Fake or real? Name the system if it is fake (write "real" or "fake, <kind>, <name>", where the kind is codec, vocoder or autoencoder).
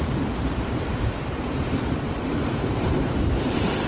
fake, vocoder, BigVGAN v2